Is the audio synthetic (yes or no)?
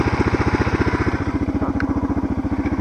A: no